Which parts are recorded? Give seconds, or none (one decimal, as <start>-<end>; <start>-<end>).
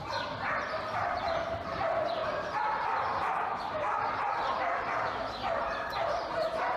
none